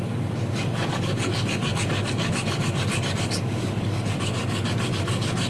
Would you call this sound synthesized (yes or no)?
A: yes